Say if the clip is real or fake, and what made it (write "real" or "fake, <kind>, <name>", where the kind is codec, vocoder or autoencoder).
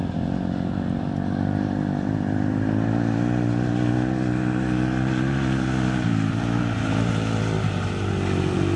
real